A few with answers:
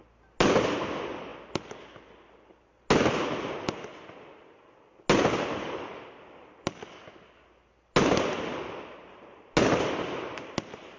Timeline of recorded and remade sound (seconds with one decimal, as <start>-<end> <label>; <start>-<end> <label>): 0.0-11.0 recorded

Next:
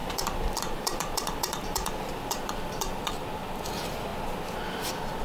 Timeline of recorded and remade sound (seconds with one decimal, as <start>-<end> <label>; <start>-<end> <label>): 0.0-3.1 remade; 3.1-5.2 recorded

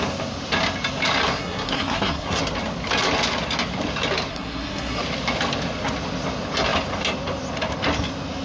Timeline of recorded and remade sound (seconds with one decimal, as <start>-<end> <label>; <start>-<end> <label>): 0.0-1.3 recorded; 1.3-2.4 remade; 2.4-4.3 recorded; 4.3-5.0 remade; 5.0-8.4 recorded

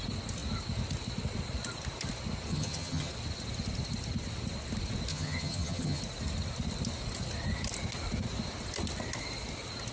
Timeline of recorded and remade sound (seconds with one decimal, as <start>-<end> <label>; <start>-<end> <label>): 0.0-2.5 recorded; 2.5-3.1 remade; 3.1-5.1 recorded; 5.1-6.0 remade; 6.0-9.9 recorded

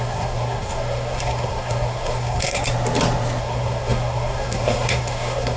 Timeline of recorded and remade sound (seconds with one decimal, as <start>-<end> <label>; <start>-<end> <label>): 0.0-2.6 remade; 2.6-3.4 recorded; 3.4-5.6 remade

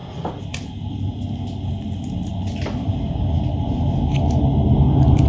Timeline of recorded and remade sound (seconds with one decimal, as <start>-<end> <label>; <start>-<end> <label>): 0.0-5.3 recorded